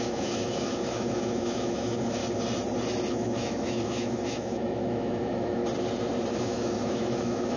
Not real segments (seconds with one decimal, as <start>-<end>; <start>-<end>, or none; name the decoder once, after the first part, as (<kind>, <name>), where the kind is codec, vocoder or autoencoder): 0.0-2.2 (autoencoder, DAC-VAE); 3.1-5.6; 6.4-7.6